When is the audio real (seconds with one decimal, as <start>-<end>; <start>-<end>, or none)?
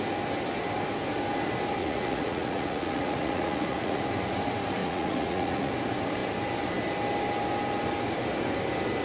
0.0-1.8; 4.0-4.8; 5.7-9.0